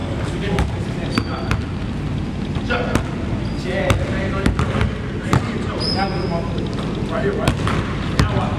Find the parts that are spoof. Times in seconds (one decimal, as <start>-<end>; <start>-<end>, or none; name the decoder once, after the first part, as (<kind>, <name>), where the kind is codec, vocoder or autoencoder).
0.0-0.7 (codec, DAC)